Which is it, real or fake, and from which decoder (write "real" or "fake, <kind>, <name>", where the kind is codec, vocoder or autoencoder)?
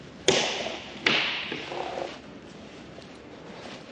fake, vocoder, BigVGAN v2